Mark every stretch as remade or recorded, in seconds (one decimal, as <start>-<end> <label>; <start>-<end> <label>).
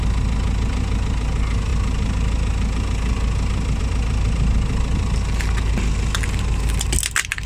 0.0-7.5 recorded